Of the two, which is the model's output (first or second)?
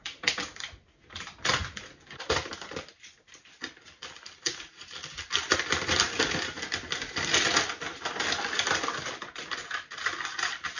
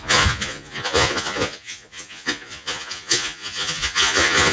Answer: second